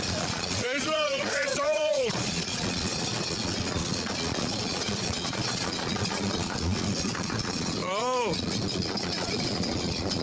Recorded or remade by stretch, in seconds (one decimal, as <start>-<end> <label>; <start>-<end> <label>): 0.0-10.2 remade